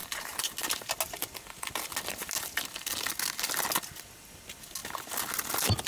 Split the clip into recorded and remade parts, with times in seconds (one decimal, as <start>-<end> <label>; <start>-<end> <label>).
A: 0.0-5.9 recorded